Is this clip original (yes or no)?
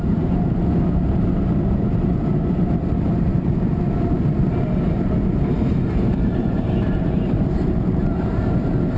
no